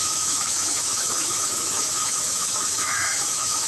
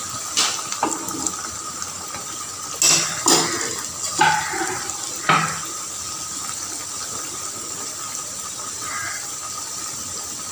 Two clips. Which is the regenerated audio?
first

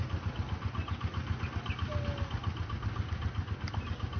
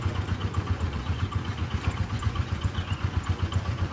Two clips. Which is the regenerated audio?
second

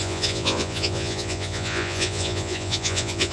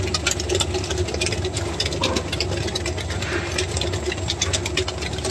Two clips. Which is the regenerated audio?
first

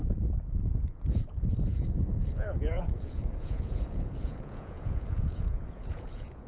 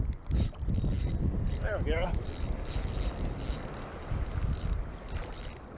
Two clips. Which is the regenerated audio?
first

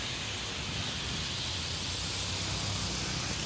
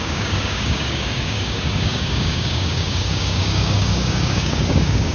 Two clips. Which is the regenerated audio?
second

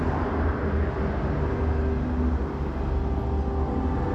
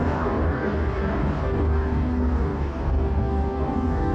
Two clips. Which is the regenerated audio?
second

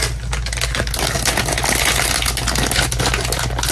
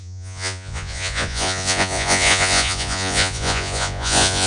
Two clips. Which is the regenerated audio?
second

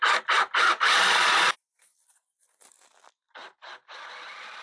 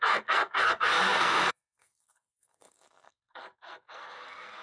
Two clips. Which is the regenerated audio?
second